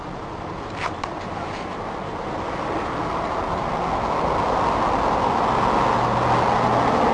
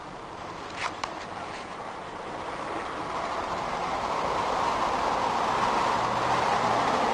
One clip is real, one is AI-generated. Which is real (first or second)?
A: first